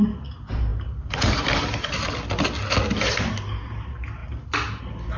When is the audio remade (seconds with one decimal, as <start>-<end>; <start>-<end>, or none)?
none